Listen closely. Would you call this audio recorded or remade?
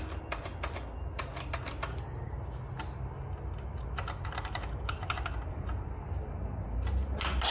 recorded